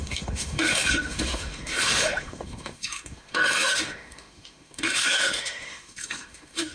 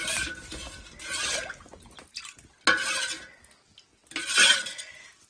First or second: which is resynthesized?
first